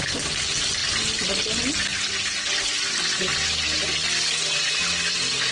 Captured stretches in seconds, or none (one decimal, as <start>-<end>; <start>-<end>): 0.0-5.5

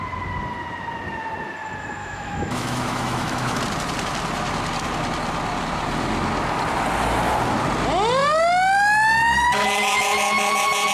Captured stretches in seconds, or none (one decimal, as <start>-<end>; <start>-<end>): 0.0-2.0; 3.6-10.9

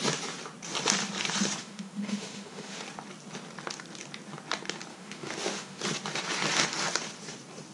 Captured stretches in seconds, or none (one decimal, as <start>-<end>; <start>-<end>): 0.0-1.6; 2.8-4.9; 5.8-7.7

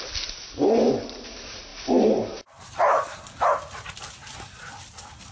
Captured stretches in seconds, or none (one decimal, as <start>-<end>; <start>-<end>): 0.0-5.3